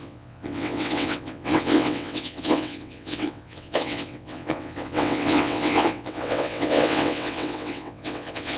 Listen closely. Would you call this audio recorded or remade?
remade